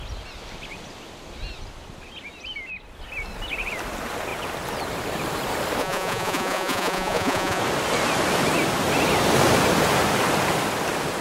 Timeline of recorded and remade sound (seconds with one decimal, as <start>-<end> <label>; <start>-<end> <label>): 0.0-5.8 recorded; 5.8-7.6 remade; 7.6-11.2 recorded